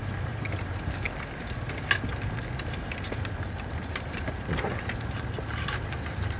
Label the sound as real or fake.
real